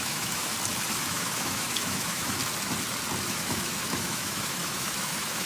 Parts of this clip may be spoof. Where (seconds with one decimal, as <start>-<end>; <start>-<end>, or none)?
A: 0.0-0.5; 1.0-2.4; 3.3-5.5